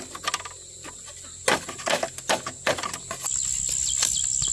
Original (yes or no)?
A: yes